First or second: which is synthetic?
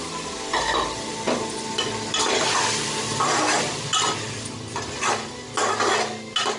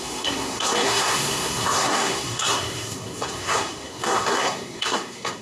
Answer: second